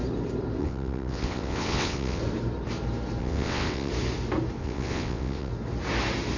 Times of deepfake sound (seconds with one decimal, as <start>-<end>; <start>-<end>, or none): 0.6-2.2; 3.2-3.9; 4.6-5.5